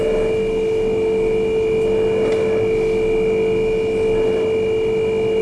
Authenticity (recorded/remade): recorded